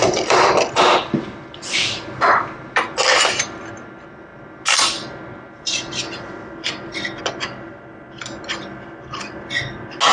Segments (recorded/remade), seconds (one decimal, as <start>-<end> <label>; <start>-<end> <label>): 0.0-10.1 recorded